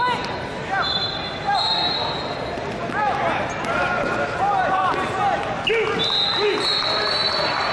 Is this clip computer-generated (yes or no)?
no